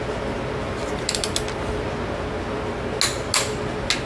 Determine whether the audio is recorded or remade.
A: recorded